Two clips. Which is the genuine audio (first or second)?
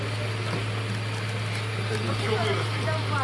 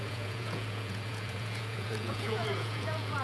first